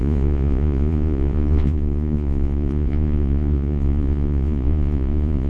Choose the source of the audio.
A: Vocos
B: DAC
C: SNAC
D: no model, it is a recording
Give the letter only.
A